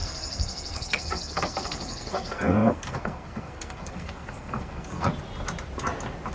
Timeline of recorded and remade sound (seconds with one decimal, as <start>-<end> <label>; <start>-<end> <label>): 0.0-5.1 remade; 5.1-6.3 recorded